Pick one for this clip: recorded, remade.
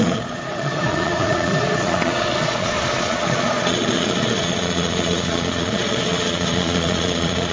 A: remade